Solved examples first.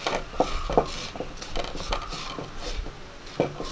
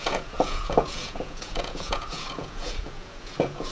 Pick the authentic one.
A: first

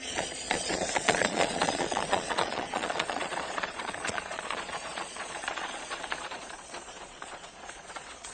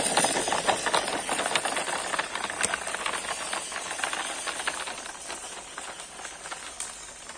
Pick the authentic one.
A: second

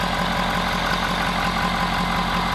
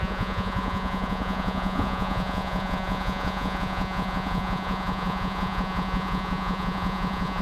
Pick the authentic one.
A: first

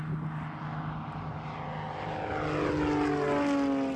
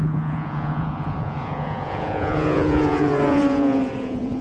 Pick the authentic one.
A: first